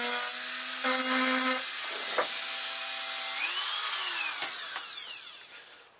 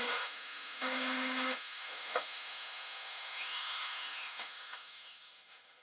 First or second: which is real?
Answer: first